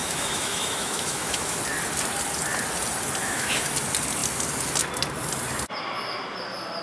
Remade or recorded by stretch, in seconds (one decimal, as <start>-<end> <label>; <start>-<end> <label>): 0.0-1.6 remade; 1.6-3.2 recorded; 3.2-3.7 remade; 3.7-6.8 recorded